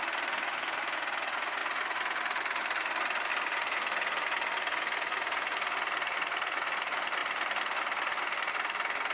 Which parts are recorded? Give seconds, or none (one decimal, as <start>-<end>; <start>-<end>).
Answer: 0.0-9.1